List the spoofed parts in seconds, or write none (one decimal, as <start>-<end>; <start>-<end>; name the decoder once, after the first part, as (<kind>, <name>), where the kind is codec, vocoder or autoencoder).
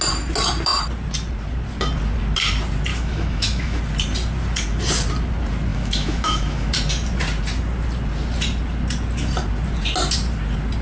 2.9-3.8 (autoencoder, DAC-VAE); 5.7-6.7